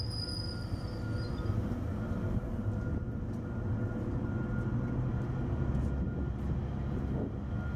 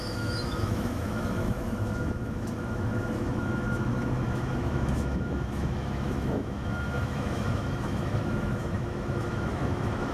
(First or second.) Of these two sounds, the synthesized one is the second